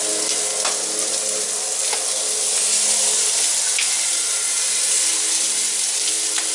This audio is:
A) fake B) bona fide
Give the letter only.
B